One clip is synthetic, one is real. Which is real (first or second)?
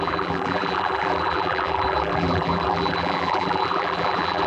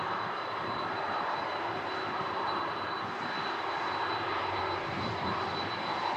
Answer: second